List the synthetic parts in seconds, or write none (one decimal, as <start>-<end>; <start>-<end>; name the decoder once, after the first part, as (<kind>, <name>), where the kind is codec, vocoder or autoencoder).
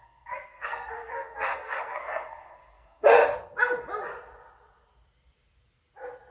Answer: 0.0-3.2 (codec, SNAC)